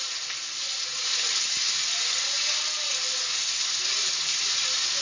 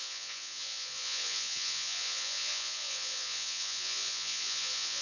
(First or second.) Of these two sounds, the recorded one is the first